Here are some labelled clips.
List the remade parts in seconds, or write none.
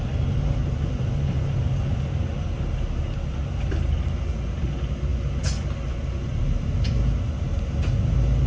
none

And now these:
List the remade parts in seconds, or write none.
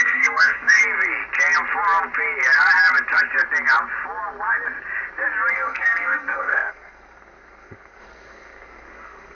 0.0-0.8; 5.5-9.3